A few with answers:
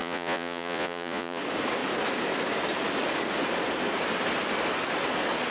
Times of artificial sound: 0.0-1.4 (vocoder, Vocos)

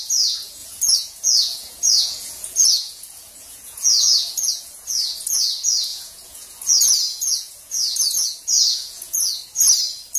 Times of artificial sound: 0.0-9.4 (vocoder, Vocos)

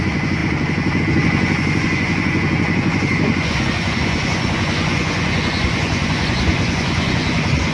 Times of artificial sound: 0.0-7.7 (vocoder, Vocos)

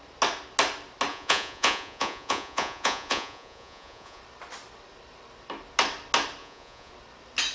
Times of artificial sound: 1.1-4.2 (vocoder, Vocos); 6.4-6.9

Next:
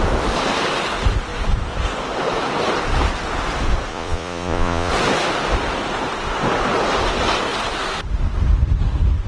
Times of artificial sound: 3.9-4.9 (vocoder, Vocos)

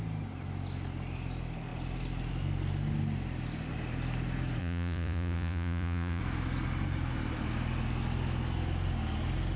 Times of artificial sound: 4.6-6.2 (vocoder, Vocos)

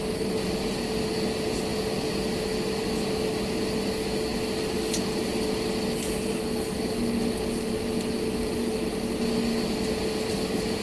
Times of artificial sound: none